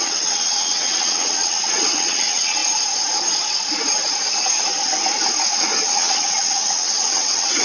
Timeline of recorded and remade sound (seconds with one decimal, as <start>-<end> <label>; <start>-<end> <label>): 0.0-2.6 remade; 2.6-5.5 recorded; 5.5-7.6 remade